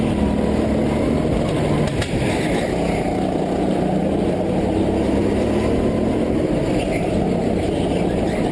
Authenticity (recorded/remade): recorded